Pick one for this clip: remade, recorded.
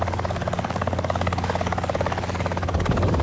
remade